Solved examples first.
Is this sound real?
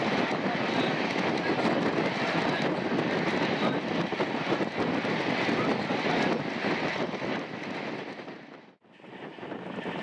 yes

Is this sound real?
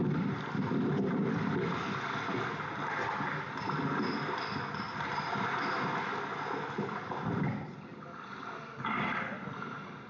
yes